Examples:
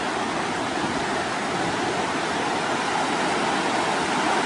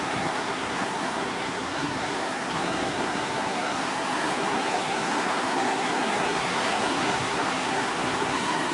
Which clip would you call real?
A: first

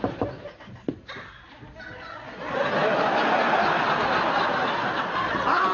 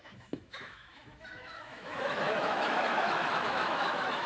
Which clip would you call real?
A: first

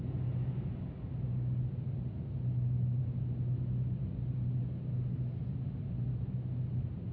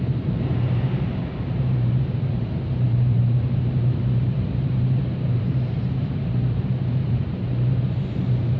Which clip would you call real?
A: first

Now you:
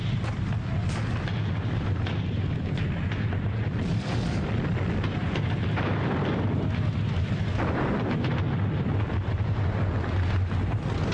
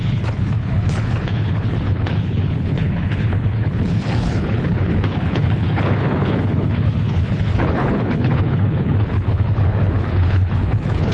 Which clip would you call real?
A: first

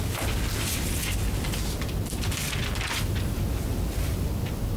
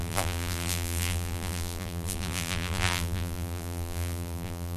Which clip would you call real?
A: first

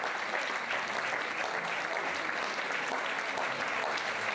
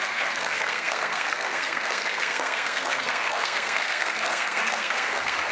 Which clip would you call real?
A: first